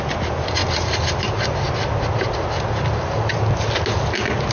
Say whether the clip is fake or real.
real